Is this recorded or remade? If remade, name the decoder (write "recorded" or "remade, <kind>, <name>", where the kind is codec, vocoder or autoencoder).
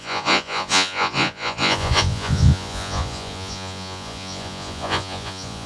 remade, vocoder, Vocos